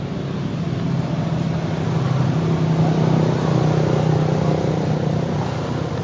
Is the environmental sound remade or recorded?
recorded